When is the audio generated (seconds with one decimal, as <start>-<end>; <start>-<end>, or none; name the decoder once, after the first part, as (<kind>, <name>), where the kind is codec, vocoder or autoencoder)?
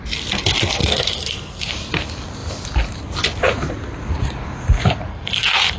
0.8-1.7 (codec, SNAC); 5.1-5.8